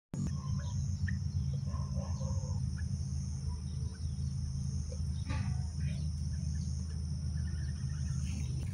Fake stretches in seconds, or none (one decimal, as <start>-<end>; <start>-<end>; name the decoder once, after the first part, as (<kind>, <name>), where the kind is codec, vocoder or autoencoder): none